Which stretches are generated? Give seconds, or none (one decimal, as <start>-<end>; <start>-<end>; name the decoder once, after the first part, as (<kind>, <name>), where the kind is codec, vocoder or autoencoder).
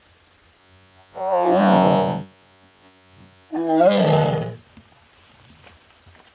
0.6-3.5 (vocoder, Vocos)